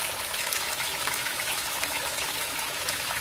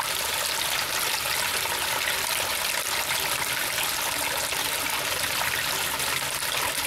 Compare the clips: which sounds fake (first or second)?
first